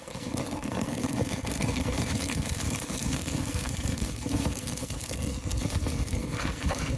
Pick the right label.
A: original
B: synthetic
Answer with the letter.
B